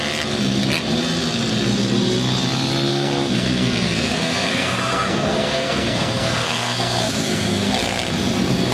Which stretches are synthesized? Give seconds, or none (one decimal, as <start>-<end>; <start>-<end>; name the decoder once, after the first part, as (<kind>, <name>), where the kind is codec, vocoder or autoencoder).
2.9-8.0 (codec, SNAC)